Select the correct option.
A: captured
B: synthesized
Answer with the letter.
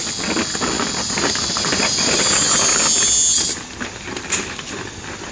A